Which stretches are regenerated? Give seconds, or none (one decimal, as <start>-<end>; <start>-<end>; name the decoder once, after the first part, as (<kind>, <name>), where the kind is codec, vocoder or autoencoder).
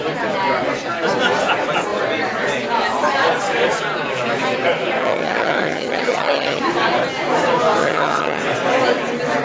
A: 5.0-6.6 (vocoder, HiFi-GAN); 7.8-8.4